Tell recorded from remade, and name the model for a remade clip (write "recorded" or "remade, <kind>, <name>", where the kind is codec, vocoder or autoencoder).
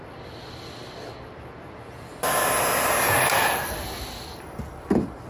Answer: recorded